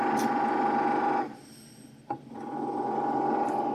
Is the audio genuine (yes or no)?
yes